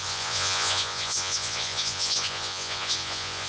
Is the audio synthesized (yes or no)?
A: yes